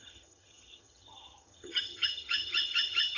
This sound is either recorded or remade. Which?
remade